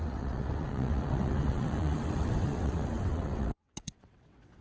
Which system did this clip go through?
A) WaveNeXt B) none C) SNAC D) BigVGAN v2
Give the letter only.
A